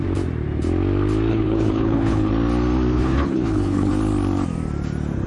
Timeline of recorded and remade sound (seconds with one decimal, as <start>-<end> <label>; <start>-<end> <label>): 0.0-1.3 recorded; 1.3-2.3 remade; 2.3-2.9 recorded; 2.9-3.9 remade; 3.9-5.3 recorded